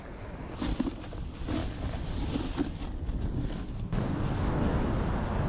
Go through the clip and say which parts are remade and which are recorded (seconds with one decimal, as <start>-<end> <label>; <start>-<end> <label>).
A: 0.0-3.4 recorded; 3.4-4.9 remade; 4.9-5.5 recorded